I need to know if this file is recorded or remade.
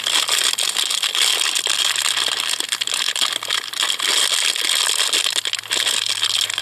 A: recorded